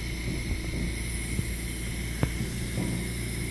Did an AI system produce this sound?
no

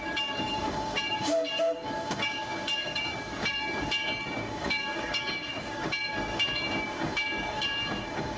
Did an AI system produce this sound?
yes